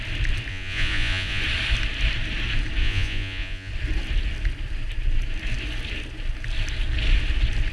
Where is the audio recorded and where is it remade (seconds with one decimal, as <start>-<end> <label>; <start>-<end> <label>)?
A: 0.0-0.5 recorded; 0.5-1.4 remade; 1.4-2.8 recorded; 2.8-3.7 remade; 3.7-7.7 recorded